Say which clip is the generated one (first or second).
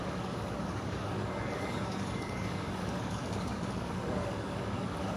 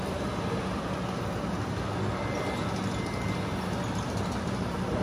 first